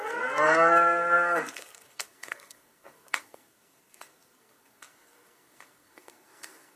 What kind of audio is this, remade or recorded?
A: remade